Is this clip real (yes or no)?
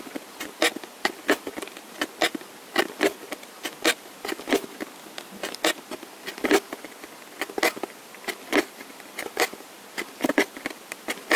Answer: yes